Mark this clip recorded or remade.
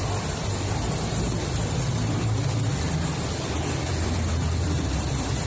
remade